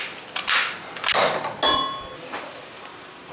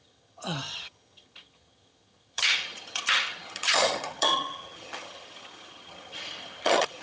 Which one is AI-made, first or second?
second